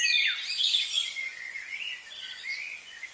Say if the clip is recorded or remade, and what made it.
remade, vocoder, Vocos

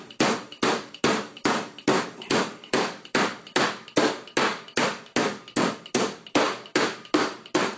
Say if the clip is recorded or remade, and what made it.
recorded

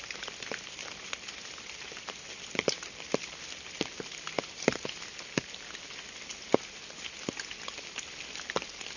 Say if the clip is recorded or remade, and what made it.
recorded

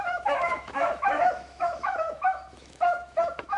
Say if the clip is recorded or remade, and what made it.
remade, autoencoder, DAC-VAE